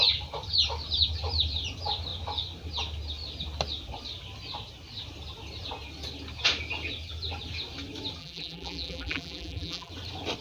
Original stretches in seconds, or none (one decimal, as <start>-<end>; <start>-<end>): 0.0-8.2; 9.9-10.4